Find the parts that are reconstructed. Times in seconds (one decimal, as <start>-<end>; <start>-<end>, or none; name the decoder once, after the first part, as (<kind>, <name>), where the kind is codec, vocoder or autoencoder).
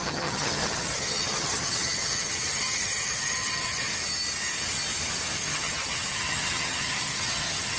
0.0-3.9 (vocoder, HiFi-GAN); 5.4-7.8